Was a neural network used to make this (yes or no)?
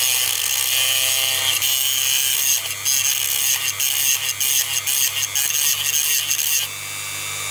no